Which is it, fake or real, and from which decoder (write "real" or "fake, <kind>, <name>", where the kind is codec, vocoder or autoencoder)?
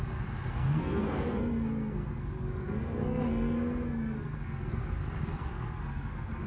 fake, codec, SNAC